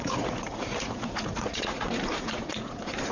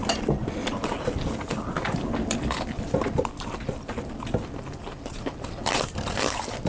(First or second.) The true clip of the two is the second